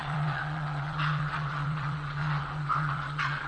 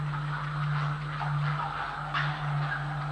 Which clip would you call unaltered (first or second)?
second